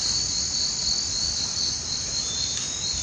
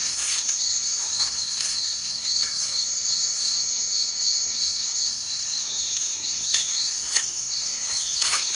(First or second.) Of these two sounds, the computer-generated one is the second